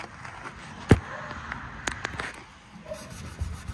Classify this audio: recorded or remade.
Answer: remade